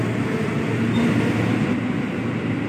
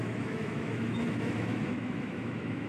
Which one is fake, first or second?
second